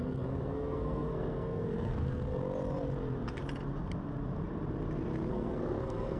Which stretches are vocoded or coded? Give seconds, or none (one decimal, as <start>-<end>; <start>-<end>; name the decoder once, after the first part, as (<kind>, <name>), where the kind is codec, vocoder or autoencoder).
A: 0.0-2.4 (codec, SNAC); 5.3-6.2